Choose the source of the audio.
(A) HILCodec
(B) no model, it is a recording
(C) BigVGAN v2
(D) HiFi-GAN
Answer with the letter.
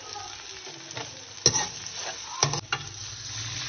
B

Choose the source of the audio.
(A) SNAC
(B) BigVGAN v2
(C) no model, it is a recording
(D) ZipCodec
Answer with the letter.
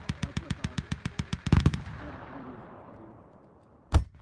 B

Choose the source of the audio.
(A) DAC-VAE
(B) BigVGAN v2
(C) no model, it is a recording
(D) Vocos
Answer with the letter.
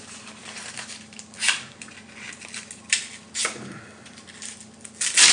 C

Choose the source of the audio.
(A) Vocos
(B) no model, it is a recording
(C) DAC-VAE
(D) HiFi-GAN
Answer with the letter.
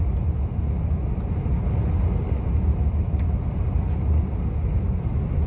B